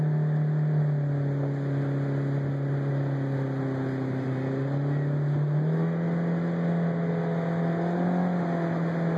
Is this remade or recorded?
recorded